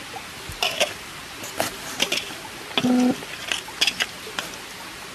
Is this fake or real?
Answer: real